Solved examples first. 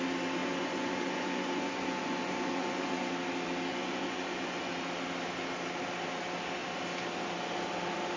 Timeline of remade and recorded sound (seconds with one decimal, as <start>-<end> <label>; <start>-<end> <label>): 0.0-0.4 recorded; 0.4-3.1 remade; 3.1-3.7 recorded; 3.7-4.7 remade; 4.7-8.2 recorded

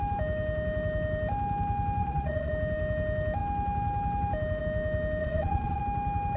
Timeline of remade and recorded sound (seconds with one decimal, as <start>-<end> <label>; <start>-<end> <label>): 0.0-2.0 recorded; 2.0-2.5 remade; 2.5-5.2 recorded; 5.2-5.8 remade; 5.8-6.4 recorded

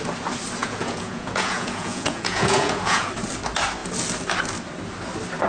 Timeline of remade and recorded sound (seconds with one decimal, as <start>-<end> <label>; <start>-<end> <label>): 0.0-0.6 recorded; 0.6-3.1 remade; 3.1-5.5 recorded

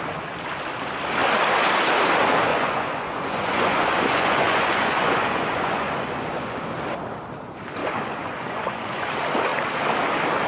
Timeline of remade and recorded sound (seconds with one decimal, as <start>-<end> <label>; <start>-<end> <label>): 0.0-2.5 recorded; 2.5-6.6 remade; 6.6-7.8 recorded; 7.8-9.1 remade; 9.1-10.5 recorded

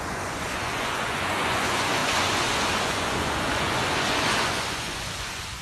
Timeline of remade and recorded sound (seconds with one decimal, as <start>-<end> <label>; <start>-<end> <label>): 0.0-5.6 remade